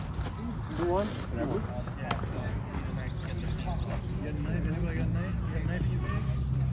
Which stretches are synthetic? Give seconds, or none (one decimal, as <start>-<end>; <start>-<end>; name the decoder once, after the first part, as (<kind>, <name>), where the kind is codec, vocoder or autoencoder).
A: none